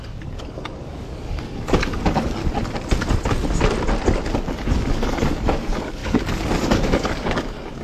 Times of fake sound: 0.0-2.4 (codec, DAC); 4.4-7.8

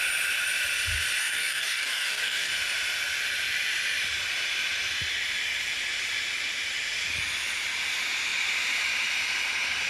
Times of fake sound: 1.2-2.5 (codec, DAC)

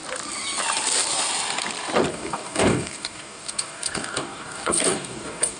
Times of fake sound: 2.1-5.6 (codec, DAC)

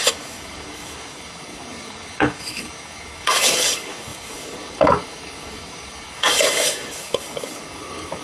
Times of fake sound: 0.0-8.2 (codec, DAC)

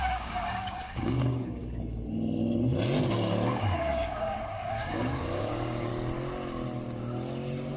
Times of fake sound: 0.0-1.6 (codec, DAC); 3.5-5.9

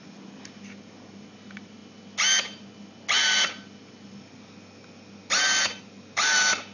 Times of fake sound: none